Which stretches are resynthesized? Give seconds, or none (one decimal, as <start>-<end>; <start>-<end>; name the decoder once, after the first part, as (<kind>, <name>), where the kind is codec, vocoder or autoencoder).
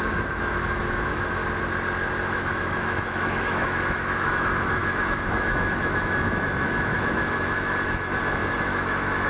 0.0-1.4 (autoencoder, DAC-VAE); 2.2-9.3